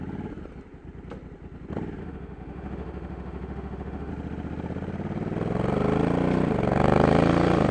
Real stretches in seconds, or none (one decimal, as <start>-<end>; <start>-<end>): 0.0-2.0; 4.1-7.7